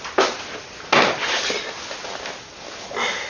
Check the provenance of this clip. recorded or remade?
recorded